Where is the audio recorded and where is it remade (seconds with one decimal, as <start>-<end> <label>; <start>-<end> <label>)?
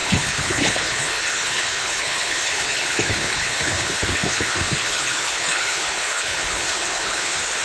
0.0-7.6 remade